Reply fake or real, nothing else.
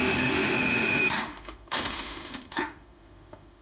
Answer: fake